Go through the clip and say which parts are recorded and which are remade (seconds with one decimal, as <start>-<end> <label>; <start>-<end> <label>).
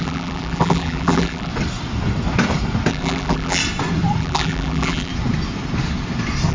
0.0-1.5 remade; 1.5-2.9 recorded; 2.9-3.6 remade; 3.6-4.2 recorded; 4.2-5.1 remade; 5.1-6.5 recorded